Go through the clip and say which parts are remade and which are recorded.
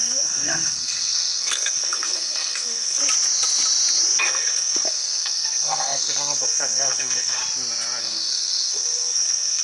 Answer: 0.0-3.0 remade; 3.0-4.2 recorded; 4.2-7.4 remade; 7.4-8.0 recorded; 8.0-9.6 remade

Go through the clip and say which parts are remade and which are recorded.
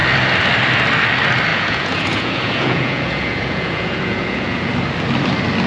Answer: 0.0-1.5 recorded; 1.5-4.7 remade; 4.7-5.7 recorded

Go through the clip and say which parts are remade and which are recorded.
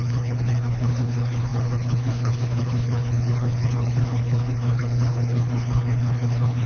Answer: 0.0-6.7 remade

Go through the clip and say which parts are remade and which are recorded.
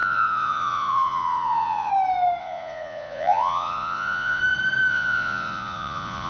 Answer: 0.0-1.9 remade; 1.9-2.4 recorded; 2.4-4.4 remade; 4.4-4.9 recorded; 4.9-6.3 remade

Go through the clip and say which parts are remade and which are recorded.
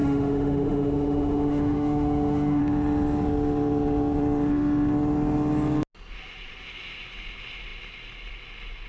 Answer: 0.0-2.6 remade; 2.6-8.9 recorded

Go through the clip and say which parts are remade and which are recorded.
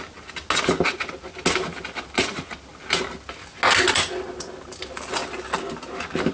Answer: 0.0-6.3 recorded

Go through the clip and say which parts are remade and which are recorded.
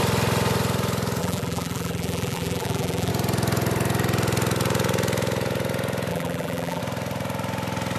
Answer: 0.0-1.2 recorded; 1.2-3.1 remade; 3.1-6.1 recorded; 6.1-6.8 remade; 6.8-8.0 recorded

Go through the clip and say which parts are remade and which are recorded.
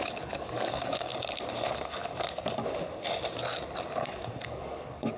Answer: 0.0-1.1 remade; 1.1-4.0 recorded; 4.0-5.2 remade